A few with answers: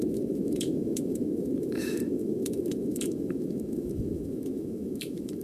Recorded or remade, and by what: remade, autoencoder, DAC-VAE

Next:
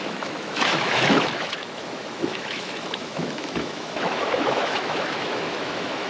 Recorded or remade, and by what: remade, autoencoder, DAC-VAE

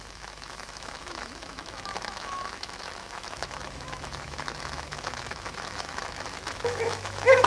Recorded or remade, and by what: remade, autoencoder, DAC-VAE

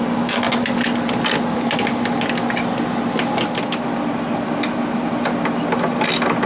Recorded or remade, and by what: recorded